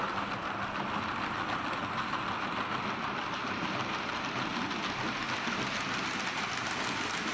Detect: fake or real real